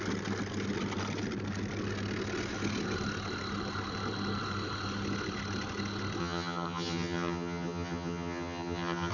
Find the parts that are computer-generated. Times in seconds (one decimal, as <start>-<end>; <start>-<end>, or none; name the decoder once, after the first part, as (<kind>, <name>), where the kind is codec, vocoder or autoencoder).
6.2-9.1 (vocoder, HiFi-GAN)